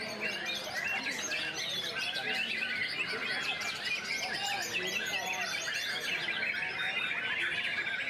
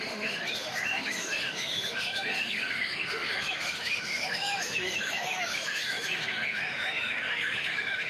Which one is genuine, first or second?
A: first